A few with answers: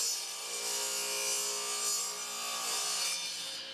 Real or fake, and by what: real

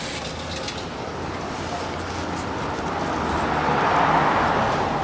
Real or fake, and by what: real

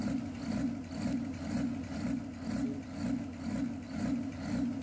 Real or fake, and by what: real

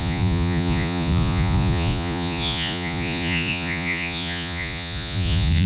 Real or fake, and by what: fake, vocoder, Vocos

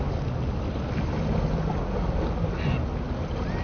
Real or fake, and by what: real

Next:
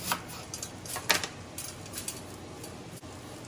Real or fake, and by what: real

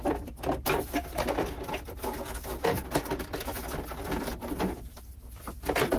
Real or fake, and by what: real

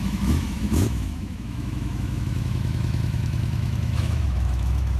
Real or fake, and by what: fake, autoencoder, DAC-VAE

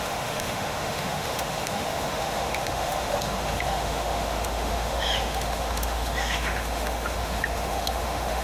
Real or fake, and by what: fake, autoencoder, DAC-VAE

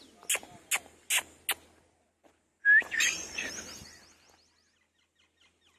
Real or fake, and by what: real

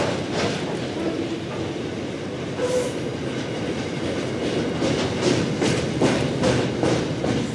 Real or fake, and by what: real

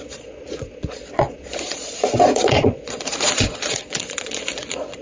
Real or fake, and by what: fake, vocoder, Vocos